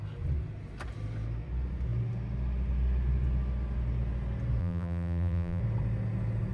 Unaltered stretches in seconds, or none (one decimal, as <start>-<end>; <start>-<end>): 0.0-4.6; 5.6-6.5